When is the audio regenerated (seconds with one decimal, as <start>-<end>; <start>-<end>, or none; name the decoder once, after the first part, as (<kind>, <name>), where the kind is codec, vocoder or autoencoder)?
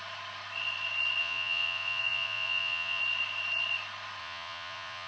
1.2-3.0 (vocoder, Vocos); 4.2-5.1